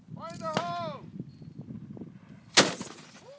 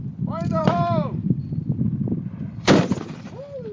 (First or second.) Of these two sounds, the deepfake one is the second